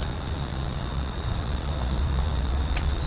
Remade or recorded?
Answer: remade